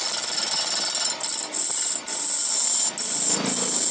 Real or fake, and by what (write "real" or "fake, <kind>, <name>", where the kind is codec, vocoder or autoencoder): real